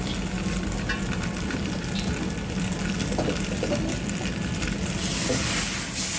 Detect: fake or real real